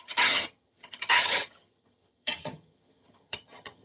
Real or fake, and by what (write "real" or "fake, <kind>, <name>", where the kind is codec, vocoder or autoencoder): fake, vocoder, HiFi-GAN